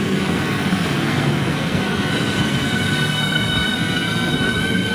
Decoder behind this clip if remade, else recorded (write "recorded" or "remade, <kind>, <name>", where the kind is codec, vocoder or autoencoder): remade, codec, SNAC